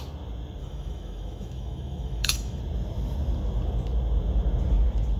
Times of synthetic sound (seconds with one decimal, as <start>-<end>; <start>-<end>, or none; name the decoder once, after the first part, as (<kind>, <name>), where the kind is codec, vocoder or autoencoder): 0.6-2.6 (autoencoder, DAC-VAE)